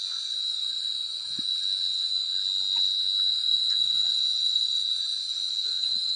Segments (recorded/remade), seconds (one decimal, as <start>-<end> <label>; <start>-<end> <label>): 0.0-0.7 recorded; 0.7-1.5 remade; 1.5-3.3 recorded; 3.3-6.2 remade